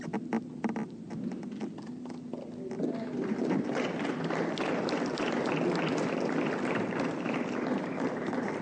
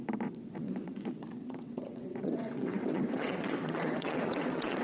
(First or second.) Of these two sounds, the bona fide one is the first